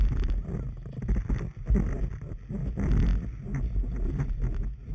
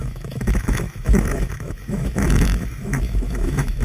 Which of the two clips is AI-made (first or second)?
second